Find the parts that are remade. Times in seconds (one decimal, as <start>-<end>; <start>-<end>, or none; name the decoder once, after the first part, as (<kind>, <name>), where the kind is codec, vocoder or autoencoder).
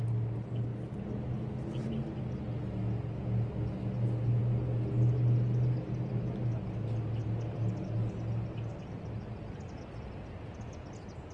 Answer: none